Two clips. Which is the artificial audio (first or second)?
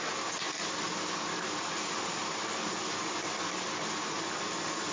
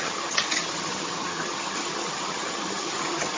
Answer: second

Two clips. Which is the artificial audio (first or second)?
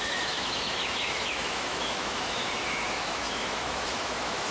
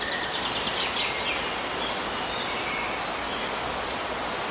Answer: first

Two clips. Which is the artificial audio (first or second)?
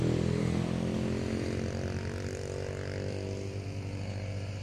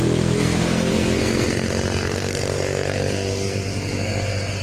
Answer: second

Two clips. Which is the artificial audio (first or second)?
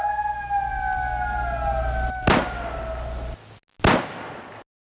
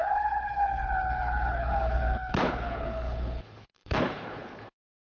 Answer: second